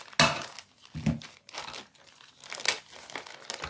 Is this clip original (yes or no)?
yes